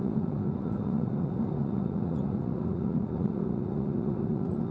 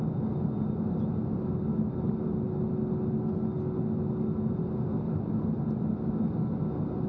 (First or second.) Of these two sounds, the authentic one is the second